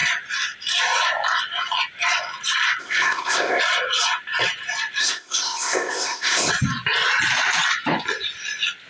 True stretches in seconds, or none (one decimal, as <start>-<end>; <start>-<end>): 0.0-2.8; 3.6-5.0; 6.5-8.9